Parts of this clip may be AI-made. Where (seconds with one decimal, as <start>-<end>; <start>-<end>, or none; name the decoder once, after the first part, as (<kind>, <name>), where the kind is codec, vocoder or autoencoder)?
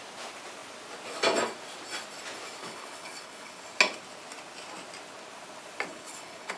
2.6-3.6 (codec, HILCodec); 5.9-6.6